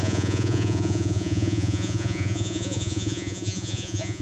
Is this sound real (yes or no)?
no